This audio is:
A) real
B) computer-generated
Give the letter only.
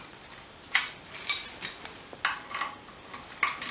A